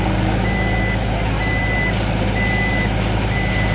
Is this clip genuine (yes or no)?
yes